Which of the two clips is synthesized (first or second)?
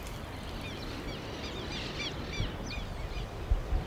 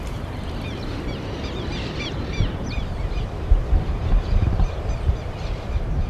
second